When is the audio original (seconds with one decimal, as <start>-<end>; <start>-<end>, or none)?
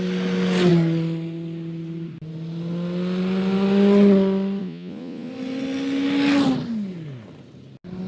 0.0-4.6; 5.3-8.1